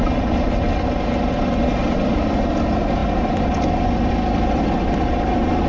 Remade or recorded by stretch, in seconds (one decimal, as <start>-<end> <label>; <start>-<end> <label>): 0.0-5.7 recorded